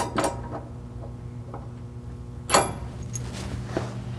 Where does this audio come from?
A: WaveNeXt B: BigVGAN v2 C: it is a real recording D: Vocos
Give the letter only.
C